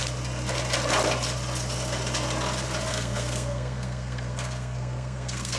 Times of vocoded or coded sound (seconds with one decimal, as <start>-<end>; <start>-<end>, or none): 2.9-5.6